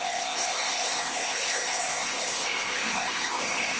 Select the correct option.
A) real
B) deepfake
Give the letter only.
B